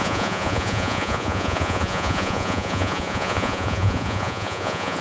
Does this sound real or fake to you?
fake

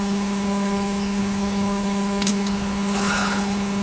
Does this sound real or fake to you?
fake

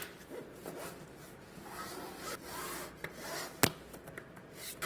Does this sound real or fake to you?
real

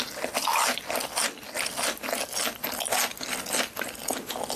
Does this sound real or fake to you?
real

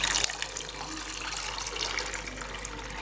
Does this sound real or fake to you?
real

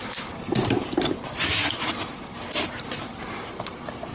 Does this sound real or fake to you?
fake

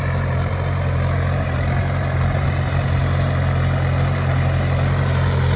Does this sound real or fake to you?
real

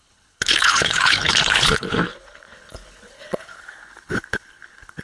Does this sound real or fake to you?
fake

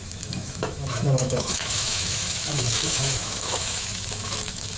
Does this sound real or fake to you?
fake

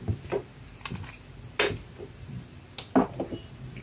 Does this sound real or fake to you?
real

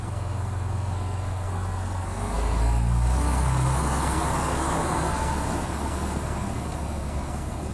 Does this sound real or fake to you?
fake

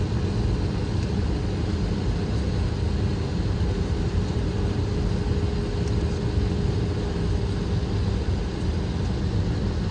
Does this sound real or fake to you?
real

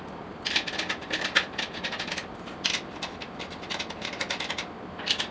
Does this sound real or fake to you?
real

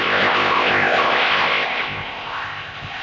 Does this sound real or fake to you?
fake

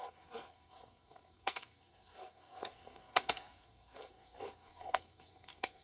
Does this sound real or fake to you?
fake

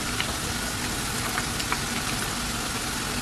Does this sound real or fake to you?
real